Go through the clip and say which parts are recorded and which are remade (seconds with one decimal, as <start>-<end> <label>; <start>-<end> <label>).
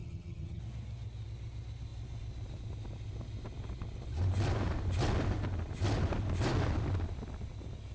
0.0-0.6 remade; 0.6-7.9 recorded